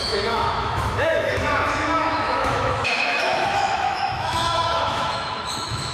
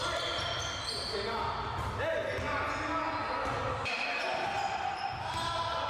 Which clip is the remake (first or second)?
first